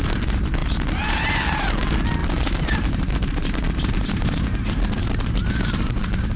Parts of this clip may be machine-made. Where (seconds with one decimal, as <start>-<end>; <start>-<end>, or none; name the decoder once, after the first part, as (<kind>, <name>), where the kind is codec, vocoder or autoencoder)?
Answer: 0.6-1.6 (vocoder, BigVGAN v2); 2.2-6.0